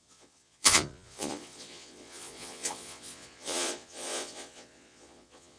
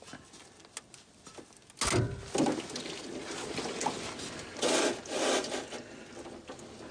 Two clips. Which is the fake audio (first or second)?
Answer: first